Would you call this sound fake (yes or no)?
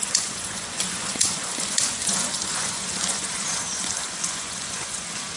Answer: yes